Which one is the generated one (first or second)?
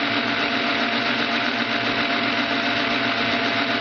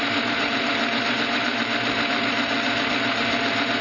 second